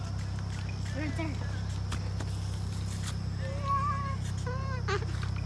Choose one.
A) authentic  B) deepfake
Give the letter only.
A